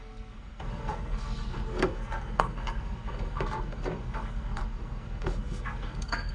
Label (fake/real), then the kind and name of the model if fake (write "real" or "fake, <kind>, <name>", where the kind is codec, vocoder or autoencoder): fake, codec, SNAC